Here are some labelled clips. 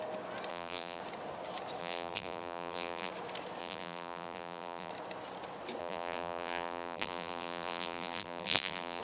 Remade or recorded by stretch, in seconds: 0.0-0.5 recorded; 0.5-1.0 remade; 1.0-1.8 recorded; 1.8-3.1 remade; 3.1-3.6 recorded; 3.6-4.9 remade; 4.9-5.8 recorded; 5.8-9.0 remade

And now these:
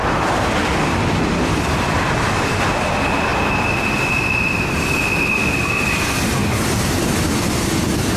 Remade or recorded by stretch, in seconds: 0.0-2.7 remade; 2.7-3.3 recorded; 3.3-5.9 remade; 5.9-6.4 recorded; 6.4-8.2 remade

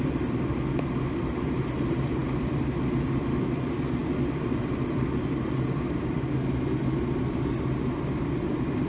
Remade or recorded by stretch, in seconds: 0.0-8.9 recorded

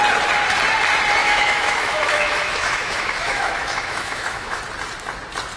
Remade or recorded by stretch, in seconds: 0.0-1.2 recorded; 1.2-4.6 remade; 4.6-5.6 recorded

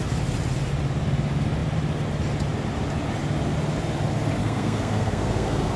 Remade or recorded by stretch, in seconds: 0.0-4.4 recorded; 4.4-5.8 remade

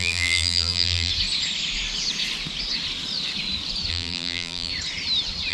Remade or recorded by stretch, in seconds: 0.0-1.1 remade; 1.1-3.9 recorded; 3.9-4.7 remade; 4.7-5.5 recorded

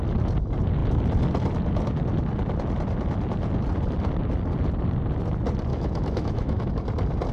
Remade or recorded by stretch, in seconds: 0.0-5.7 recorded; 5.7-6.7 remade; 6.7-7.3 recorded